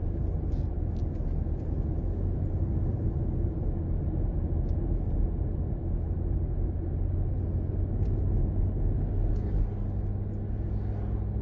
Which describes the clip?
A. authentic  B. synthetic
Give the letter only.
A